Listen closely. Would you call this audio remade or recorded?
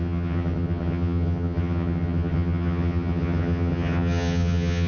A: remade